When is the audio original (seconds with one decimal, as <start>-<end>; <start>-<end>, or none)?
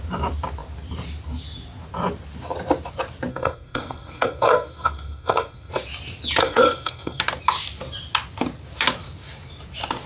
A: 0.0-3.3; 5.7-6.4; 7.2-10.1